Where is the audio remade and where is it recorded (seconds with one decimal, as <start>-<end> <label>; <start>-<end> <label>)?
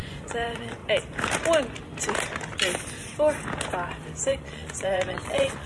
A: 0.0-0.8 remade; 0.8-4.2 recorded; 4.2-5.7 remade